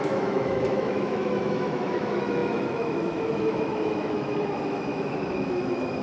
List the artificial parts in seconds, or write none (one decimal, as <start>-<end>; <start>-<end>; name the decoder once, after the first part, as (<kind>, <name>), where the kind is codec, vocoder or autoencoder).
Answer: 0.0-6.0 (autoencoder, DAC-VAE)